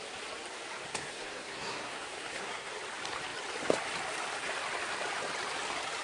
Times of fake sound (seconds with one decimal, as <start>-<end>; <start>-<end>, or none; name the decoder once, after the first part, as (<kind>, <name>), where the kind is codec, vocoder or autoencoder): 0.9-2.7 (codec, SNAC)

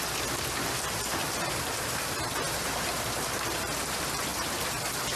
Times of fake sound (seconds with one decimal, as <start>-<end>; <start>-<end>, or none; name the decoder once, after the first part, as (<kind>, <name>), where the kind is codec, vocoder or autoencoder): none

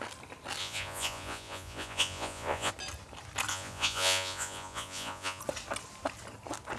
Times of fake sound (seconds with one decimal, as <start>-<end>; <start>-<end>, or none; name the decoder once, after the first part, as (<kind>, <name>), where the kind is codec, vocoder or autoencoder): 0.6-2.7 (vocoder, Vocos); 3.5-5.4

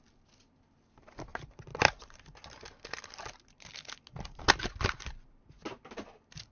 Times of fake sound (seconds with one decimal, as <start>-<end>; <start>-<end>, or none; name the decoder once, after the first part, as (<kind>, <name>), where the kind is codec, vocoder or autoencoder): none

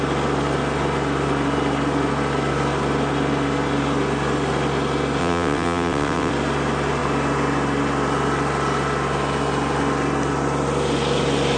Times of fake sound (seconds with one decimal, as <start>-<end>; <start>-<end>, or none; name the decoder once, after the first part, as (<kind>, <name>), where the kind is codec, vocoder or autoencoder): 5.2-6.3 (vocoder, WaveNeXt)

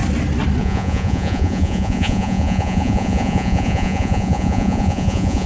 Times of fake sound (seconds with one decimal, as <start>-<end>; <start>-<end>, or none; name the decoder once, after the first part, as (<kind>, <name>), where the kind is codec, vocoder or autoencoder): 0.6-5.5 (vocoder, Vocos)

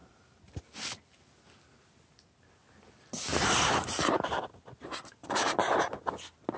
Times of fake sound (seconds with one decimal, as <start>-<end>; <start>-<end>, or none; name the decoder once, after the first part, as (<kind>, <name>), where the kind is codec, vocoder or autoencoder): 0.0-0.6 (vocoder, BigVGAN v2); 3.3-4.4; 5.2-6.0